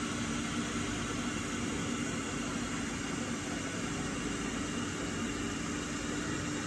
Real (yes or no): yes